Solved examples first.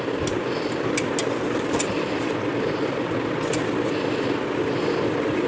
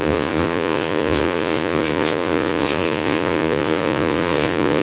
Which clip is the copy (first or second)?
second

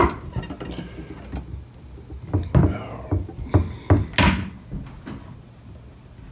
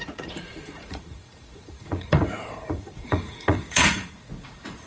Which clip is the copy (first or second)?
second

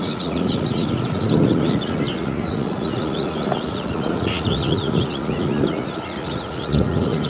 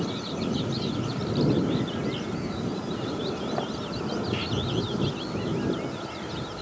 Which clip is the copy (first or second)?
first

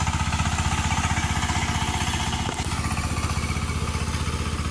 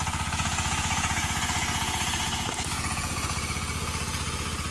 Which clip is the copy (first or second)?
second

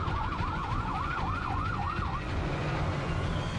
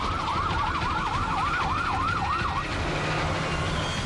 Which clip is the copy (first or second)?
first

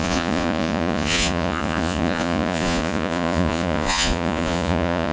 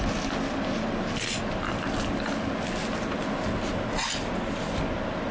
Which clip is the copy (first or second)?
first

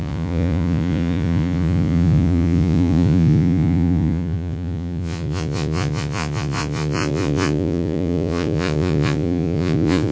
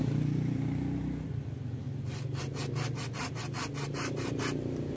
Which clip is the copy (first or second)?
first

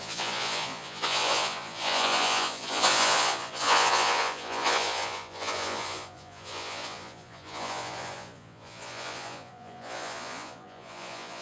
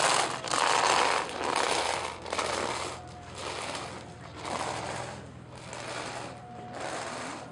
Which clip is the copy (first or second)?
first